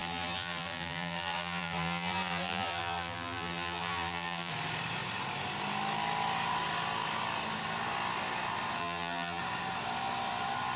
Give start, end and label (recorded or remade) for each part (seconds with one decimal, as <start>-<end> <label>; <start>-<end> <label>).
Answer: 0.0-4.5 remade; 4.5-8.8 recorded; 8.8-9.4 remade; 9.4-10.8 recorded